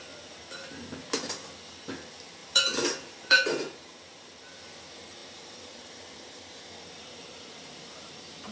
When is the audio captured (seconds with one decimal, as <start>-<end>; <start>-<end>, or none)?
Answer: 0.0-2.4; 4.8-5.2; 8.1-8.5